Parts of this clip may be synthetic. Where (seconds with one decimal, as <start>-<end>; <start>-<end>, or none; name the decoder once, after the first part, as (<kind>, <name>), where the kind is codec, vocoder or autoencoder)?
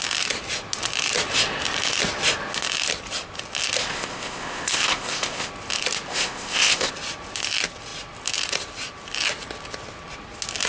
3.8-5.5 (codec, ZipCodec); 6.1-6.9